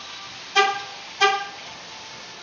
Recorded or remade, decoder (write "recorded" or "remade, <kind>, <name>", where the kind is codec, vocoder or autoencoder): recorded